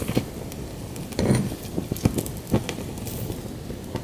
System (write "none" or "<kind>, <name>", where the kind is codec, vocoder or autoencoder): none